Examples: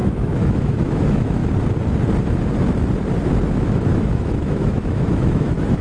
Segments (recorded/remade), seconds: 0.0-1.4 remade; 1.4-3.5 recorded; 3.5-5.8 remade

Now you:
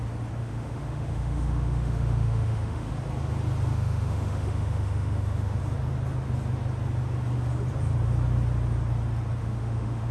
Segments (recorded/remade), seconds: 0.0-0.4 recorded; 0.4-2.9 remade; 2.9-3.7 recorded; 3.7-5.6 remade; 5.6-9.4 recorded; 9.4-10.1 remade